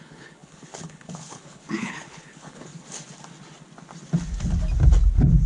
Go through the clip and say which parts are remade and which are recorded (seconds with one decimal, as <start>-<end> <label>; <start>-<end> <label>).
0.0-2.7 remade; 2.7-5.5 recorded